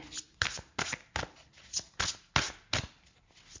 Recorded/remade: recorded